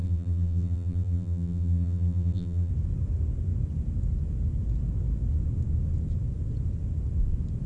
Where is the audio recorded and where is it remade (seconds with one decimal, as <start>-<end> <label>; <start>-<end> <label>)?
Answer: 0.0-2.7 remade; 2.7-7.7 recorded